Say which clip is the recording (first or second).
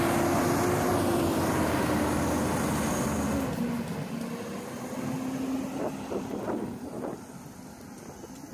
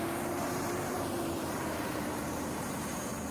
first